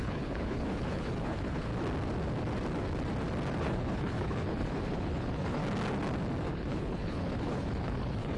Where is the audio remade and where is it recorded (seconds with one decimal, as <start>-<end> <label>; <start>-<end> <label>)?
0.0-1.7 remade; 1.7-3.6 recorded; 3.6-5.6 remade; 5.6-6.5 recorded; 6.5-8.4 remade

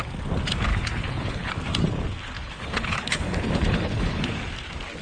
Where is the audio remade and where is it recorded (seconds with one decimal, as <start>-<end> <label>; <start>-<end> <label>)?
0.0-0.7 recorded; 0.7-1.5 remade; 1.5-2.4 recorded; 2.4-4.3 remade; 4.3-5.0 recorded

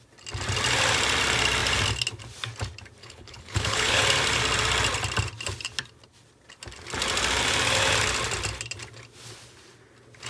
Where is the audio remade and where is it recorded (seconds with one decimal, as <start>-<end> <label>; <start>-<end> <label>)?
0.0-3.0 recorded; 3.0-4.0 remade; 4.0-10.3 recorded

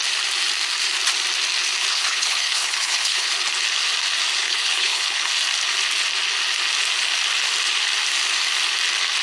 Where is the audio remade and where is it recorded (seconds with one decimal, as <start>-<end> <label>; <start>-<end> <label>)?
0.0-1.9 recorded; 1.9-3.3 remade; 3.3-4.4 recorded; 4.4-5.3 remade; 5.3-9.2 recorded

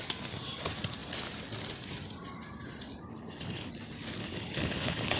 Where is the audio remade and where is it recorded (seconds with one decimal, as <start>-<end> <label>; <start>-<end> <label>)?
0.0-3.1 recorded; 3.1-3.7 remade; 3.7-4.2 recorded; 4.2-5.2 remade

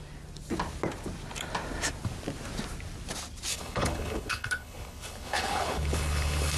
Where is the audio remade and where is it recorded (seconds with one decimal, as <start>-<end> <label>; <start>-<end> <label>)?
0.0-3.5 recorded; 3.5-6.6 remade